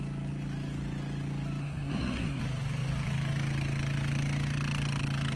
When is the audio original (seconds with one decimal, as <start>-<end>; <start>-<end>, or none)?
0.0-1.6; 2.4-5.4